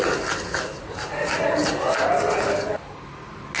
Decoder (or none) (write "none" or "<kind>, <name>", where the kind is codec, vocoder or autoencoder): none